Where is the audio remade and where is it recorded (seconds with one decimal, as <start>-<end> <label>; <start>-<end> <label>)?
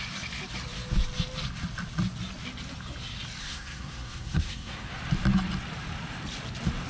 0.0-3.4 recorded; 3.4-4.9 remade; 4.9-6.9 recorded